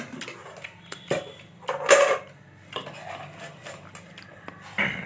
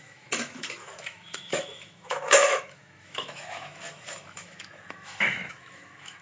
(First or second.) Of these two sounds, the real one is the first